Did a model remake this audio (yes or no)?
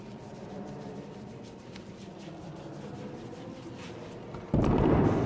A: yes